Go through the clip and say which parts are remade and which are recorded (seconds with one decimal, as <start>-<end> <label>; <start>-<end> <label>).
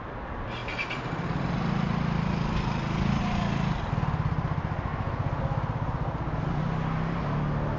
0.0-7.8 recorded